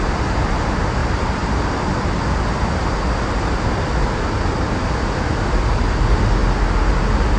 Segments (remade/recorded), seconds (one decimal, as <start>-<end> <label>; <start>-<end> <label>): 0.0-7.4 recorded